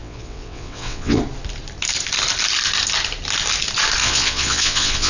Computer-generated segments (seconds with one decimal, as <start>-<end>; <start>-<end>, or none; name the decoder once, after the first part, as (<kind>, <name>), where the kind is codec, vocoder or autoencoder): 0.0-1.2 (vocoder, WaveNeXt); 4.0-5.1